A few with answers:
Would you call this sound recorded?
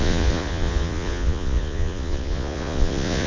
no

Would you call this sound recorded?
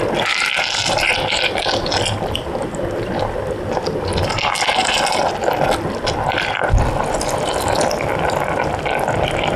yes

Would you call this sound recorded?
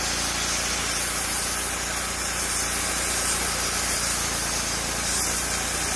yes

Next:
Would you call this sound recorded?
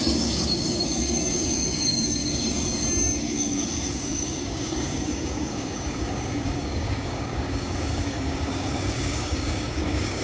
no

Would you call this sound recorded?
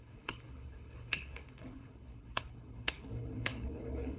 no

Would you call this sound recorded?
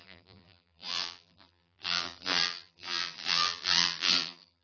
no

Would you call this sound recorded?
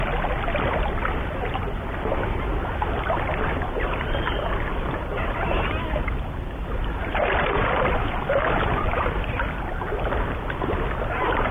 yes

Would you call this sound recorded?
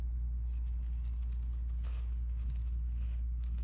yes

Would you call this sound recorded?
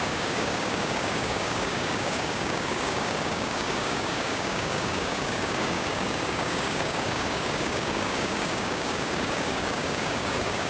no